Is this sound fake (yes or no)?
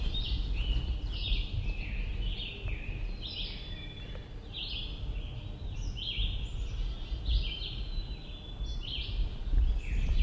no